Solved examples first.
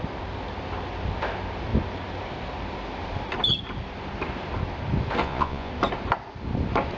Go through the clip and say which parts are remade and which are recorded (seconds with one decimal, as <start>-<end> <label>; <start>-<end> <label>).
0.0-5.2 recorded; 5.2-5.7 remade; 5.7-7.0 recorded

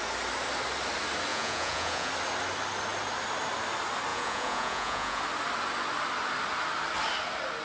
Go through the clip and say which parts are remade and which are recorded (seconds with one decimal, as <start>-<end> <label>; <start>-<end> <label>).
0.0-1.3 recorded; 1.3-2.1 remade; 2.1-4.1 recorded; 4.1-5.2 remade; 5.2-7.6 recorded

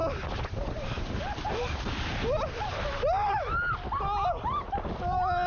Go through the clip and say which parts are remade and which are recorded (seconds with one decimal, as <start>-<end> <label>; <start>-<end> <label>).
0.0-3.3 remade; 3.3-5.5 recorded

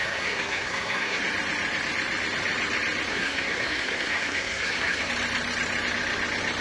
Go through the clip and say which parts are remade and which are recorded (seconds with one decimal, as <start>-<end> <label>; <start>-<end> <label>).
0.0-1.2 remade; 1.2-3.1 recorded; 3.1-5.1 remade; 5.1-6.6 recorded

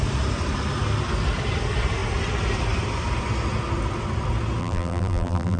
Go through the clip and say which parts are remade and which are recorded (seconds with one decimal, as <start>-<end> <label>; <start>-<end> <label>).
0.0-4.6 recorded; 4.6-5.6 remade

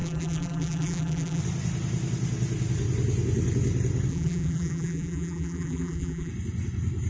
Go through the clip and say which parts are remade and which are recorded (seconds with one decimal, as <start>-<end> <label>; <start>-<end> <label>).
0.0-1.4 remade; 1.4-4.1 recorded; 4.1-6.3 remade; 6.3-7.1 recorded

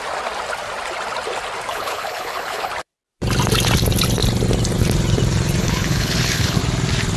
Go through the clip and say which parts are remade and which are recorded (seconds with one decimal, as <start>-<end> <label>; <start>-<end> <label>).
0.0-1.7 recorded; 1.7-2.7 remade; 2.7-5.6 recorded; 5.6-6.6 remade; 6.6-7.2 recorded

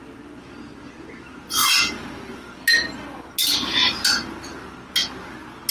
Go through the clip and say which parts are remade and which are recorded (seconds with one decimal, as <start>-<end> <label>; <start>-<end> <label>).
0.0-5.7 recorded